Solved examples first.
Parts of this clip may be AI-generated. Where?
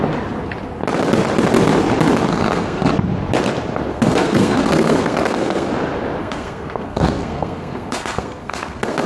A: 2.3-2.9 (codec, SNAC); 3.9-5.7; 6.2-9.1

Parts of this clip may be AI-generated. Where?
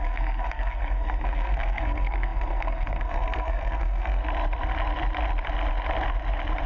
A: 0.0-4.2 (codec, SNAC)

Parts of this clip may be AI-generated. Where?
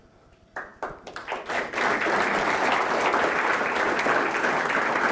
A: none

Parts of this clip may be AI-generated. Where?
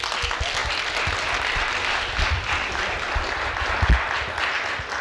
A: none